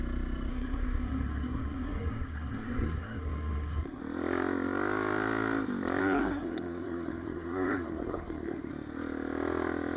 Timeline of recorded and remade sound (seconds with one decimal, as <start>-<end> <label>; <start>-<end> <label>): 0.0-0.5 recorded; 0.5-4.0 remade; 4.0-6.0 recorded; 6.0-8.7 remade; 8.7-10.0 recorded

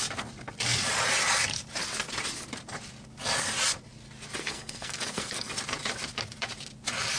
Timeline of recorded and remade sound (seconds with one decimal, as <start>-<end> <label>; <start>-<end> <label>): 0.0-4.4 recorded; 4.4-5.5 remade; 5.5-7.2 recorded

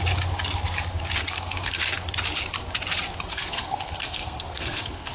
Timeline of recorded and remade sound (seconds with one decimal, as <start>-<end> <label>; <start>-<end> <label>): 0.0-1.2 recorded; 1.2-1.8 remade; 1.8-3.3 recorded; 3.3-5.1 remade

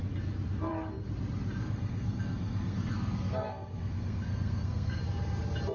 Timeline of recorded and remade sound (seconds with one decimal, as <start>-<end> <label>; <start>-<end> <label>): 0.0-1.6 recorded; 1.6-5.0 remade; 5.0-5.7 recorded